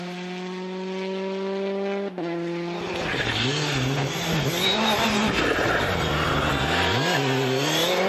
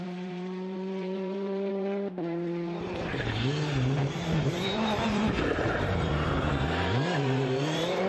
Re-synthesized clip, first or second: second